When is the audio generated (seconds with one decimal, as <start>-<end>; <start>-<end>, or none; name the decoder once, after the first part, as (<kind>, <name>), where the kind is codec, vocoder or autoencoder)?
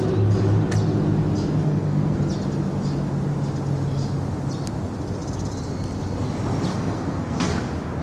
1.6-2.2 (codec, SNAC); 6.7-7.6